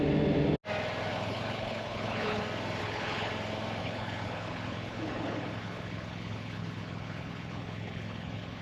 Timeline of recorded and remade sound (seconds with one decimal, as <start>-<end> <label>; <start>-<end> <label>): 0.0-1.1 recorded; 1.1-2.4 remade; 2.4-2.8 recorded; 2.8-3.3 remade; 3.3-3.8 recorded; 3.8-8.6 remade